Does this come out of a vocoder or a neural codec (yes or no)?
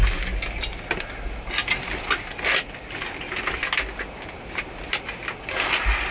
no